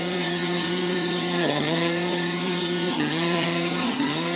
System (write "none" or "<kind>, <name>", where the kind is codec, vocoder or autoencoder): vocoder, HiFi-GAN